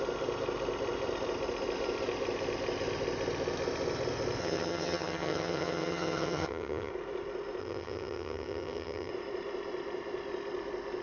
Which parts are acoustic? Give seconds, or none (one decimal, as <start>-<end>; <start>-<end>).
0.0-4.4; 6.9-7.6; 9.1-11.0